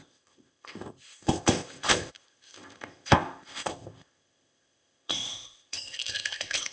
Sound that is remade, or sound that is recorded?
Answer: remade